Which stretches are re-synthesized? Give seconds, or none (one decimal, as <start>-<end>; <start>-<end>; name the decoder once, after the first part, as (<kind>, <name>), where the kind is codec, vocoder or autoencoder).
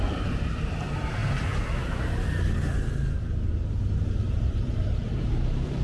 0.0-1.2 (vocoder, BigVGAN v2); 4.0-5.8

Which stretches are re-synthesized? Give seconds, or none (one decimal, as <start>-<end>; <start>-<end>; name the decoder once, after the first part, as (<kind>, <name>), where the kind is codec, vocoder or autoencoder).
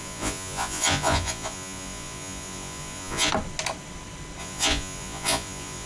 0.0-3.3 (vocoder, Vocos); 4.4-5.9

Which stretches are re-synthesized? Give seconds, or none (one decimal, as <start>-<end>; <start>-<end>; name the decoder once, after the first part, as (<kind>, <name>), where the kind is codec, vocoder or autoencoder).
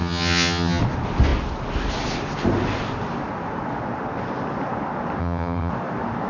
0.0-0.8 (vocoder, HiFi-GAN); 5.2-5.7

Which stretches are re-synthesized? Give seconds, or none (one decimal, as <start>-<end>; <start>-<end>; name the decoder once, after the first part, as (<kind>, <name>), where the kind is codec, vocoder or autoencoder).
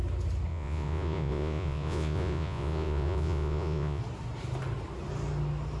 0.5-4.0 (vocoder, Vocos)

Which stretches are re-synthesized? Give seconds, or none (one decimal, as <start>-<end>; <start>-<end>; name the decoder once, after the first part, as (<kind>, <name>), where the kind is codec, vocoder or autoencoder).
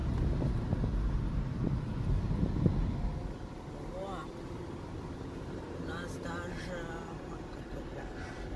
none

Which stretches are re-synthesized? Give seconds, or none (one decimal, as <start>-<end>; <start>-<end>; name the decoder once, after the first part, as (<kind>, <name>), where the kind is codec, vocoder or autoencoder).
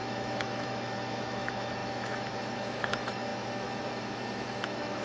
0.0-5.0 (autoencoder, DAC-VAE)